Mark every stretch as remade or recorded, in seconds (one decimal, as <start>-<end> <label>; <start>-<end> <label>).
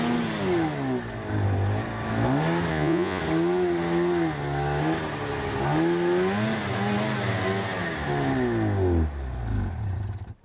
0.0-2.7 recorded; 2.7-3.2 remade; 3.2-10.4 recorded